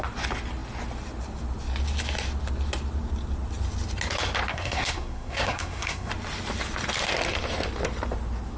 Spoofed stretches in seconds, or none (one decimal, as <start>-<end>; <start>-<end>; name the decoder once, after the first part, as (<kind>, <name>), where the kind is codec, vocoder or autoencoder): 4.5-6.1 (codec, SNAC)